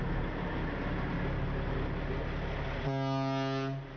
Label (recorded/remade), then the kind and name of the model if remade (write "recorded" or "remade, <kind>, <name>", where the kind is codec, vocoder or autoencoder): recorded